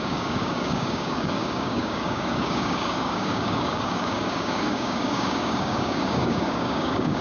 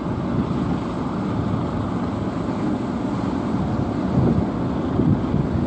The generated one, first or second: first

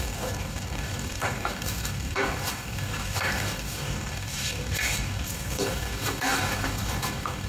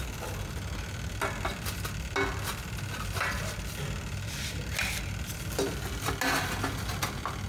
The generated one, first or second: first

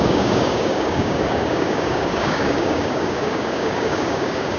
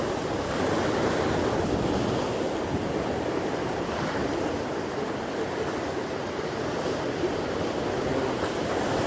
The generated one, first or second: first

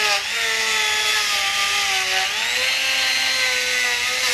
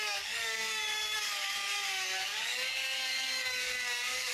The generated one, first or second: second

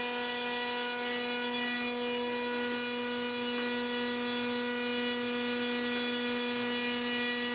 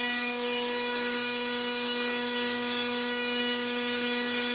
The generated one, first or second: second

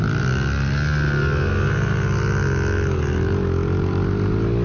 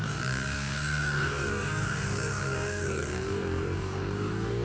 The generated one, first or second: second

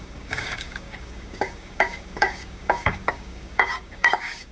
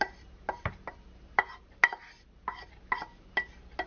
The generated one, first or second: first